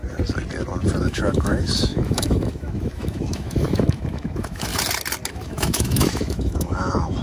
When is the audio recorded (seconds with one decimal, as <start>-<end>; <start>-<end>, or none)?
0.0-1.0; 4.7-5.3